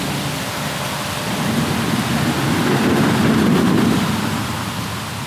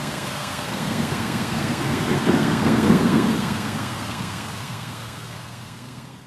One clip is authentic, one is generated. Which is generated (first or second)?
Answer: second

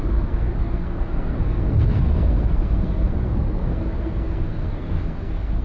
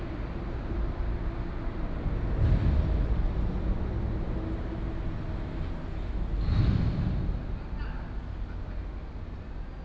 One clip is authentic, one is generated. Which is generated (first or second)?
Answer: first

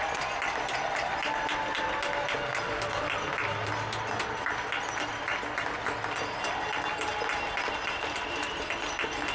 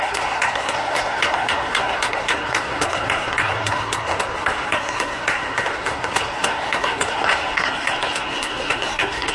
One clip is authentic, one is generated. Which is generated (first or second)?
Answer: second